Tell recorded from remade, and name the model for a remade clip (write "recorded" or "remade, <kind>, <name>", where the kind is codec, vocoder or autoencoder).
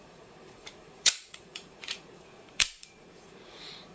remade, vocoder, Vocos